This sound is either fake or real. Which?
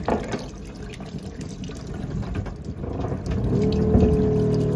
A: real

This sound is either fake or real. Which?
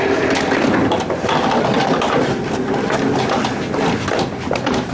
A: real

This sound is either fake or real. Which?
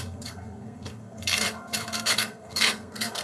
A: fake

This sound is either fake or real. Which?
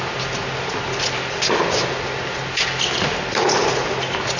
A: real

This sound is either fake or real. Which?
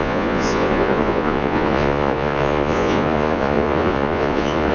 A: fake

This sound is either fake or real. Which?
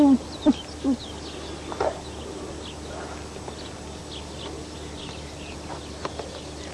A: real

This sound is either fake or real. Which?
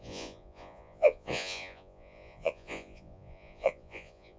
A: fake